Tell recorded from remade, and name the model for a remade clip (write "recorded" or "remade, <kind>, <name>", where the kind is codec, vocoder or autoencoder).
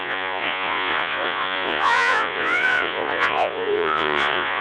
remade, vocoder, Vocos